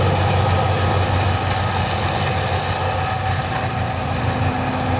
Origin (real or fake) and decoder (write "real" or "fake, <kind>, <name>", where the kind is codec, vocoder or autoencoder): real